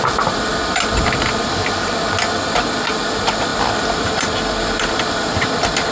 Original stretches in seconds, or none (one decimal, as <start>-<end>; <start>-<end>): 0.0-0.6; 2.0-3.5; 4.9-5.9